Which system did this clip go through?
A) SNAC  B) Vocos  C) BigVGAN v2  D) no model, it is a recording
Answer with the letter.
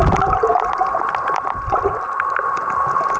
D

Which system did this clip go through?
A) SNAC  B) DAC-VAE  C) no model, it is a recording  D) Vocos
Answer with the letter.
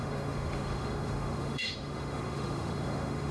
B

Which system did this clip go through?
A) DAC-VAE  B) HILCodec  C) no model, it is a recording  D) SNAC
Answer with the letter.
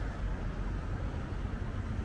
C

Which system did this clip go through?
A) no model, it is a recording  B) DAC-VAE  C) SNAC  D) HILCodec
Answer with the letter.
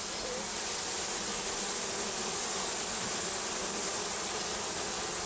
A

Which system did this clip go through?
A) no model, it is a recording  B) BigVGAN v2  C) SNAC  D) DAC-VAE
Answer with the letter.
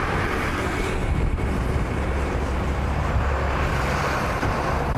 B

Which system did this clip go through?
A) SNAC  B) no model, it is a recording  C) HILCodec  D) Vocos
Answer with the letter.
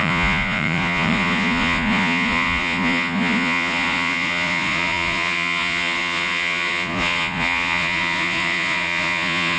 D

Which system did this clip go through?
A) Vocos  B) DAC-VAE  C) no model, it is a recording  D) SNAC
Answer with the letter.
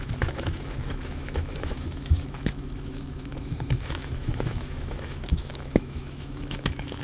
B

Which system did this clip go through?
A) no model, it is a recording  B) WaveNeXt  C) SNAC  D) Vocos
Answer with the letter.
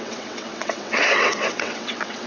B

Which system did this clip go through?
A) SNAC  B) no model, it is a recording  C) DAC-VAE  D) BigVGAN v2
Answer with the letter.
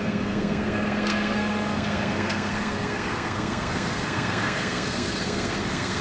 A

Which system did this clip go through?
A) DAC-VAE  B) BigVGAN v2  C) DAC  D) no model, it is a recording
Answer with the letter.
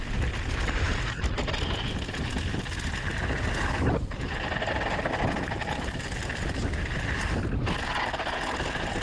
D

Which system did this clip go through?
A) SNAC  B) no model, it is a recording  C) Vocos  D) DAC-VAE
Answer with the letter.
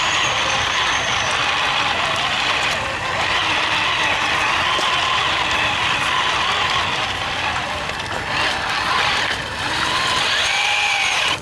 B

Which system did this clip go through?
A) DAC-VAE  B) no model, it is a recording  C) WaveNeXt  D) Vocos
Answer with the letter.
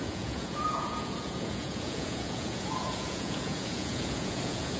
D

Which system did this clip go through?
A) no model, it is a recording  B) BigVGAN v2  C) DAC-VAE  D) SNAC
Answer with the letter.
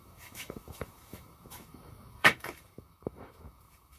C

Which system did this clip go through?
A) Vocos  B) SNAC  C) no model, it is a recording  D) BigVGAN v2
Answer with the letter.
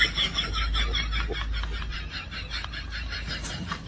C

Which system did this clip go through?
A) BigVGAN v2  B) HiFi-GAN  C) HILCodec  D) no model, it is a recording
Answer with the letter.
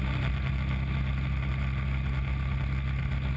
D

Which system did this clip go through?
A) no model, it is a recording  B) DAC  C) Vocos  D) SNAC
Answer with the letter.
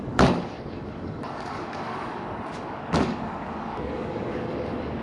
B